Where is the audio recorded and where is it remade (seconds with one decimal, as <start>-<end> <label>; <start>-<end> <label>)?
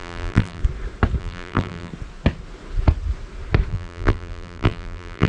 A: 0.0-0.6 remade; 0.6-1.2 recorded; 1.2-1.9 remade; 1.9-3.7 recorded; 3.7-5.3 remade